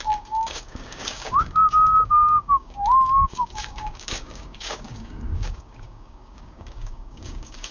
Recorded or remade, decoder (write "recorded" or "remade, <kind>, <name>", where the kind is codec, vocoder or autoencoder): remade, codec, DAC